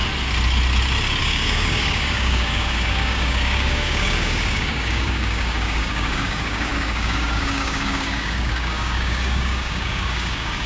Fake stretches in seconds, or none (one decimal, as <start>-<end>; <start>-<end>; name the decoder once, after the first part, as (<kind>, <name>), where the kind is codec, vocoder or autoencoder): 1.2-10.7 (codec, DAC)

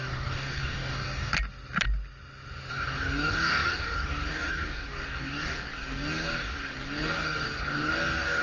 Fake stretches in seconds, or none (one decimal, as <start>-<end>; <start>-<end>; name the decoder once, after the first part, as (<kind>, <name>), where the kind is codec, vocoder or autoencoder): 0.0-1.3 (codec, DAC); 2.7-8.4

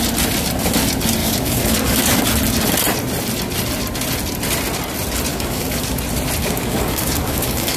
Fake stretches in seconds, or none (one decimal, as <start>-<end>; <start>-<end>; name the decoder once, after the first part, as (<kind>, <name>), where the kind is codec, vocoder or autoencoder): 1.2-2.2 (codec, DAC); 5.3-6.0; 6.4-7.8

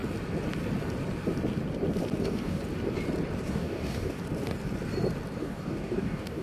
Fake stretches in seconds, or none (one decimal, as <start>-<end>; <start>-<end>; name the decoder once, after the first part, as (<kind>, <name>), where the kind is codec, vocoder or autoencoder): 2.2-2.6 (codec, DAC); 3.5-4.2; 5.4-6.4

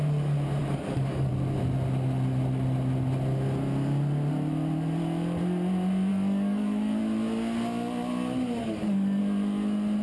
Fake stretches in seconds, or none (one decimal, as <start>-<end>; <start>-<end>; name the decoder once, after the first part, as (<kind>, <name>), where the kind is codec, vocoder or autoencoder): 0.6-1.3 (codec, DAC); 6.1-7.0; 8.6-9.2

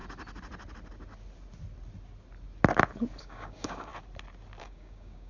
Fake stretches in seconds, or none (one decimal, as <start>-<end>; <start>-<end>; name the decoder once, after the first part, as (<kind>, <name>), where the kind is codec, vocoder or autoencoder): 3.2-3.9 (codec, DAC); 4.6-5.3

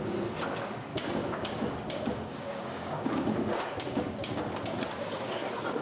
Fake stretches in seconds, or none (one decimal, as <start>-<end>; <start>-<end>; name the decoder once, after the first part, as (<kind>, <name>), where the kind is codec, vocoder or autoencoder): 0.9-4.4 (codec, DAC)